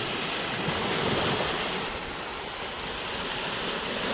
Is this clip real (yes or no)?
yes